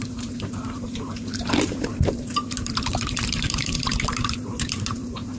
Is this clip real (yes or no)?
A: no